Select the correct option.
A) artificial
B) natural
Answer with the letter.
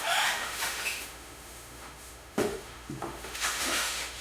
A